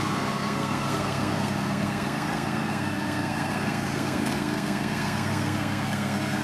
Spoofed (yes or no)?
yes